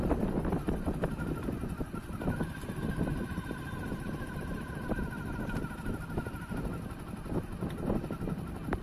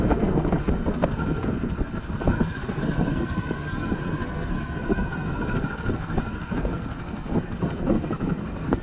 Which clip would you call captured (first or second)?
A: first